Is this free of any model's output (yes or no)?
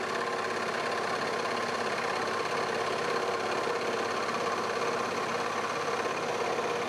yes